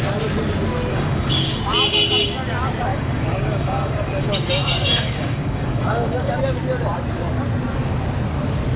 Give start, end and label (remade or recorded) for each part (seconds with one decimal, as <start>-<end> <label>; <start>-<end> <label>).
0.0-0.9 recorded; 0.9-1.6 remade; 1.6-2.9 recorded; 2.9-6.4 remade; 6.4-8.8 recorded